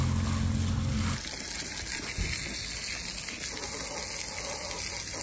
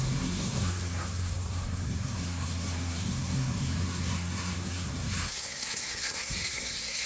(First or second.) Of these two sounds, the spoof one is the second